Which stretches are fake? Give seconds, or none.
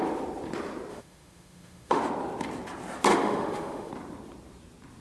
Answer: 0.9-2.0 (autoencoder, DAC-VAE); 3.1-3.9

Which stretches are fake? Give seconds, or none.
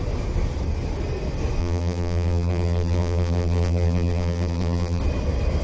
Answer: 1.6-5.0 (vocoder, BigVGAN v2)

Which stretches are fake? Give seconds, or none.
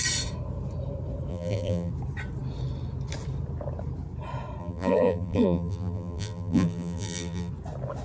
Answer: 1.3-1.9 (vocoder, BigVGAN v2); 4.6-7.5